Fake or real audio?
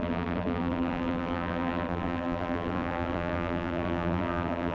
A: fake